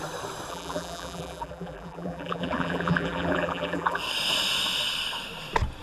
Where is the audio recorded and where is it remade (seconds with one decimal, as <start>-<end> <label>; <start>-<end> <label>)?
0.0-0.5 recorded; 0.5-4.0 remade; 4.0-5.8 recorded